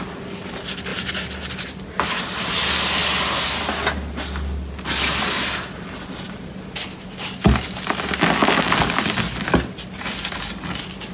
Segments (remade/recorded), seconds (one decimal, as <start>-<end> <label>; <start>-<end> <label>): 0.0-11.1 recorded